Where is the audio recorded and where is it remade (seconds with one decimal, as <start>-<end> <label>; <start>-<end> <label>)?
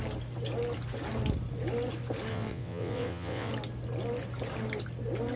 0.0-2.3 recorded; 2.3-3.5 remade; 3.5-5.4 recorded